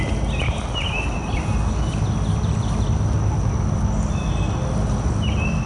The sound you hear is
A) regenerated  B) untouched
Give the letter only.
B